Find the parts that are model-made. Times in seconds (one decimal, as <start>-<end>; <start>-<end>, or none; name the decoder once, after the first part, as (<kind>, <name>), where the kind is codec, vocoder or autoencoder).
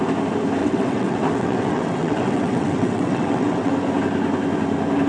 0.6-3.7 (vocoder, WaveNeXt)